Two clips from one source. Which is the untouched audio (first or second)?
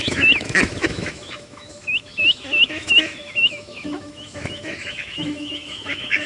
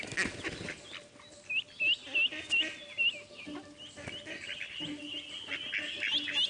second